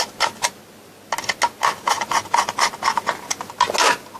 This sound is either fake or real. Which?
real